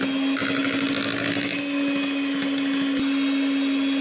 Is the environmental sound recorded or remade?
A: recorded